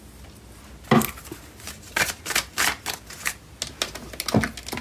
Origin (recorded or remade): recorded